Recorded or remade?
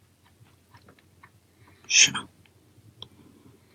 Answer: recorded